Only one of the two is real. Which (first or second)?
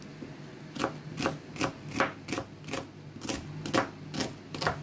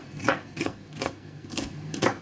first